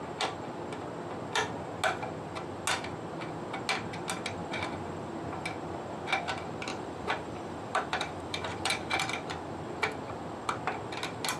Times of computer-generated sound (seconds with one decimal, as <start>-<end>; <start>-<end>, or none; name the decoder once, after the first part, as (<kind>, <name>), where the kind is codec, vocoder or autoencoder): 4.4-5.1 (vocoder, BigVGAN v2); 6.7-9.0